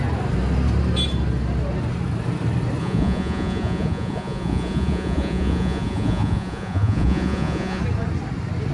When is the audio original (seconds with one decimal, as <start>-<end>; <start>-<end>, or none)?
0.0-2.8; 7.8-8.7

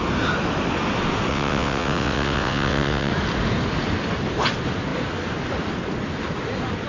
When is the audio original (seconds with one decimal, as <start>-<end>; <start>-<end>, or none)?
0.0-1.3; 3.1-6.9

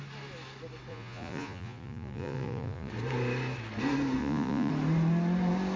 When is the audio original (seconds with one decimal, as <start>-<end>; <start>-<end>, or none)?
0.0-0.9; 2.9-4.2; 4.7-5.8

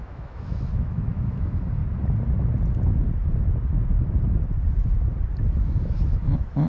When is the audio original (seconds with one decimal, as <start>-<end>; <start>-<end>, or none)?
1.8-5.8

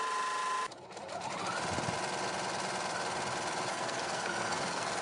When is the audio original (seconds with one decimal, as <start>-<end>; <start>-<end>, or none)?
0.0-3.7

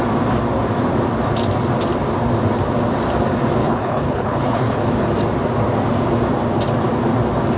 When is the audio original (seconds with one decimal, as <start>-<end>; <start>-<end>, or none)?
0.0-3.6; 4.8-7.6